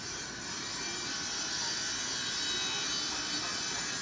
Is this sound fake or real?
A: real